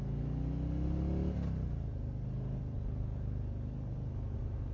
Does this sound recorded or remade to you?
recorded